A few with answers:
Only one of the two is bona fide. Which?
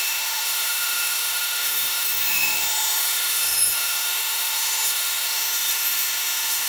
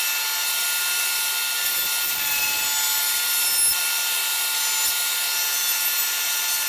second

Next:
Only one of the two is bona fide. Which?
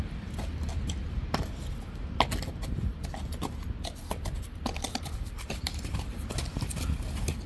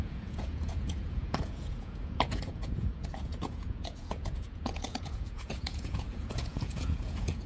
first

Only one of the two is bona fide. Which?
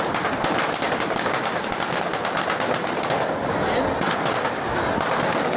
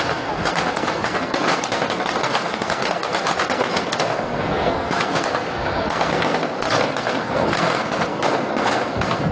first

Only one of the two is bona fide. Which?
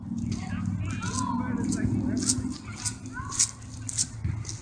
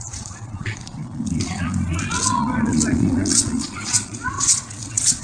first